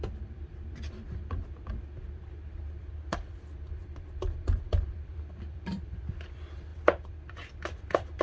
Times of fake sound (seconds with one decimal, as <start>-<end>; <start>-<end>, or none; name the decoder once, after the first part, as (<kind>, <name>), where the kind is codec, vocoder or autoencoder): 0.0-8.2 (vocoder, BigVGAN v2)